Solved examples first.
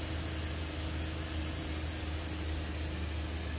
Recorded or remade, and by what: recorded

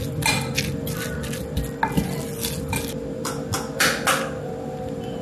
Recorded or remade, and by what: recorded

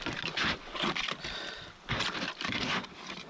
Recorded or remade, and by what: recorded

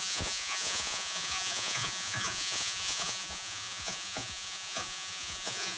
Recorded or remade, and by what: remade, vocoder, Vocos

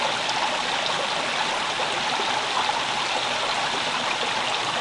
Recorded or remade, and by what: recorded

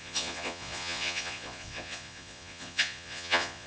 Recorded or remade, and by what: remade, vocoder, Vocos